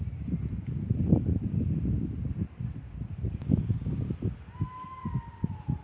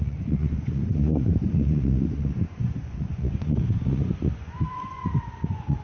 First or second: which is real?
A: first